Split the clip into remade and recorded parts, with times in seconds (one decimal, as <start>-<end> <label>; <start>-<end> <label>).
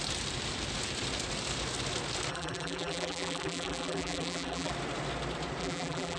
0.0-2.3 recorded; 2.3-4.7 remade; 4.7-5.6 recorded; 5.6-6.2 remade